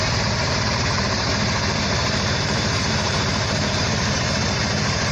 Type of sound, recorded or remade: remade